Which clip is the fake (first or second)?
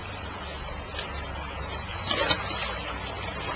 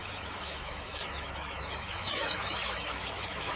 second